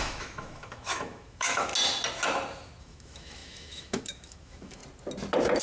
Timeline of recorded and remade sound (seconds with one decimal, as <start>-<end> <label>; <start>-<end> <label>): 0.0-1.7 remade; 1.7-2.8 recorded; 2.8-4.8 remade; 4.8-5.6 recorded

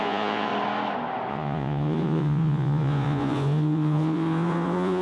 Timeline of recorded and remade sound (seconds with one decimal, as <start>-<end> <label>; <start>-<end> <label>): 0.0-0.5 remade; 0.5-1.3 recorded; 1.3-5.0 remade

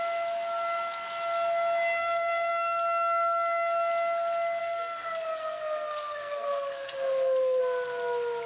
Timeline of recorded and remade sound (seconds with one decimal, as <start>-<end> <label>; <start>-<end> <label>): 0.0-2.0 recorded; 2.0-2.5 remade; 2.5-4.6 recorded; 4.6-7.6 remade; 7.6-8.5 recorded

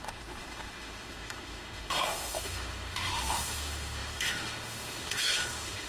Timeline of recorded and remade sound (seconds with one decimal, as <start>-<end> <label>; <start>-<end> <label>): 0.0-5.9 remade

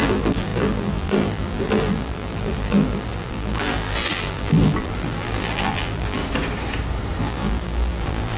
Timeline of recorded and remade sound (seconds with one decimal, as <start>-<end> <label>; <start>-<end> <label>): 0.0-6.2 remade; 6.2-7.2 recorded; 7.2-8.4 remade